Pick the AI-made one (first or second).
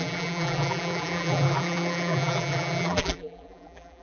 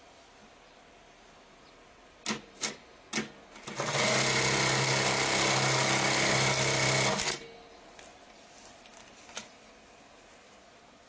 first